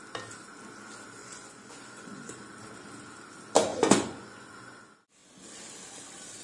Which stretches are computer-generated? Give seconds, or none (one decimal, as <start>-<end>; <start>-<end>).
1.2-2.5; 3.7-4.8